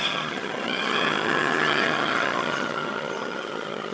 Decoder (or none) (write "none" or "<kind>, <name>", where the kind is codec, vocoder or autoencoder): vocoder, HiFi-GAN